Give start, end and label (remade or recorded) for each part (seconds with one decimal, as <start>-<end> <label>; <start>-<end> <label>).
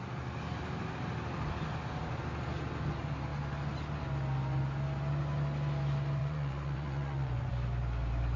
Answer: 0.0-6.2 recorded; 6.2-7.5 remade; 7.5-8.4 recorded